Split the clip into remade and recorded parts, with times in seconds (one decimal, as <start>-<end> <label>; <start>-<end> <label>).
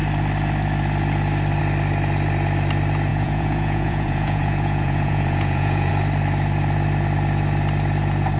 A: 0.0-3.1 recorded; 3.1-5.9 remade; 5.9-8.4 recorded